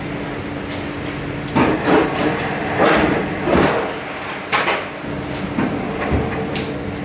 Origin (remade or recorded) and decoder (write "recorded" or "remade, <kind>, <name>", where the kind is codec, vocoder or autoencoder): remade, vocoder, BigVGAN v2